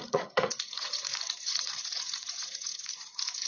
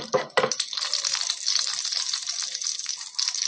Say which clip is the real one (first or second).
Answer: second